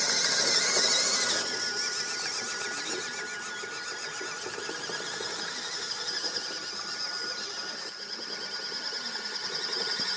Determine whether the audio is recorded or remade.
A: recorded